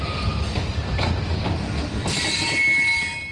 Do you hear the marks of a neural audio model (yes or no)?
no